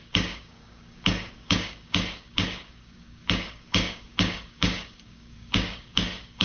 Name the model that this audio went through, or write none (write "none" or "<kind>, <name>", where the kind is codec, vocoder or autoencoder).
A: codec, DAC